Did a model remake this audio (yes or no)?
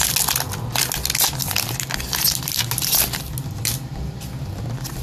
no